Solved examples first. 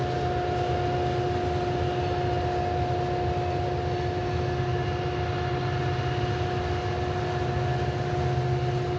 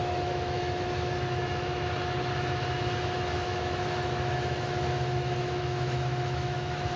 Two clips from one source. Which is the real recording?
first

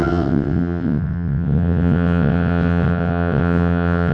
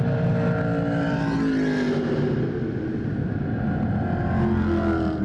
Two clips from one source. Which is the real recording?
second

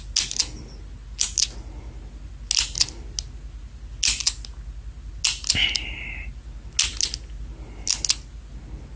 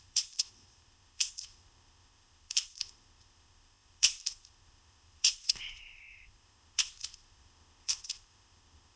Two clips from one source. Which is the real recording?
first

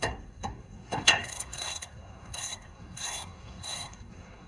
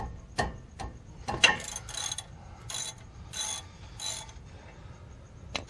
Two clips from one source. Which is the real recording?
second